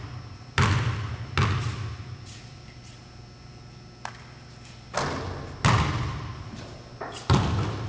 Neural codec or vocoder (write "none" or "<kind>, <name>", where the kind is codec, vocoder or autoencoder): none